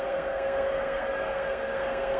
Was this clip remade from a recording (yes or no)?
yes